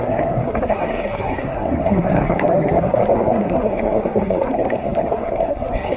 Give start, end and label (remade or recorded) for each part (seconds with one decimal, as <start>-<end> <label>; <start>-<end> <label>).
0.0-6.0 remade